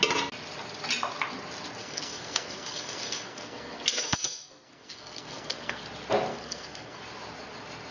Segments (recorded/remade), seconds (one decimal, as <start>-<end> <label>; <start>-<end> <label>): 0.0-1.8 recorded; 1.8-5.8 remade; 5.8-6.3 recorded; 6.3-7.0 remade; 7.0-7.9 recorded